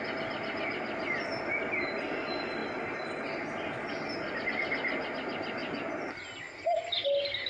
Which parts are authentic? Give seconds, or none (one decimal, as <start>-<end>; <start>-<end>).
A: 0.0-7.5